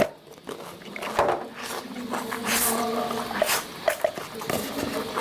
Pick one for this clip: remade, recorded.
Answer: recorded